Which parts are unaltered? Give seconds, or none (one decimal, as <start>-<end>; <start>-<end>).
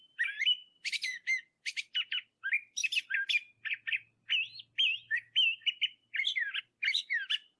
0.0-7.6